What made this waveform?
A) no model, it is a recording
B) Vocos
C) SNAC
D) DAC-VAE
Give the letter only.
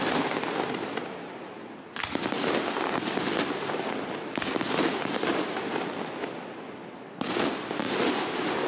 A